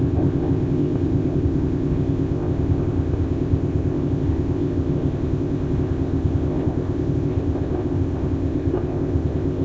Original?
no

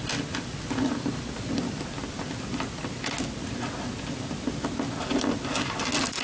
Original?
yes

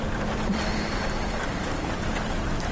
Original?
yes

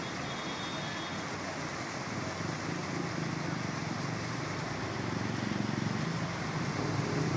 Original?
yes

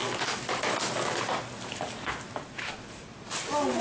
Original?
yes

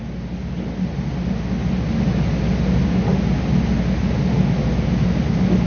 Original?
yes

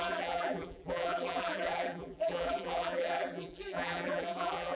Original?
no